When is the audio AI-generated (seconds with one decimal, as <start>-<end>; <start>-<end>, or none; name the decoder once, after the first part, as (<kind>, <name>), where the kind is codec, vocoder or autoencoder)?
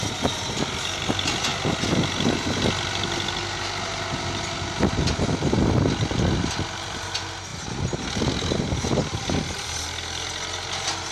none